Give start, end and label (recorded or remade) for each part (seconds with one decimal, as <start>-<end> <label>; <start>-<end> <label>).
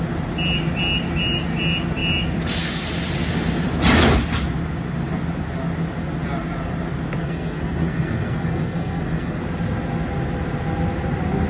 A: 0.0-7.2 recorded; 7.2-9.4 remade; 9.4-11.5 recorded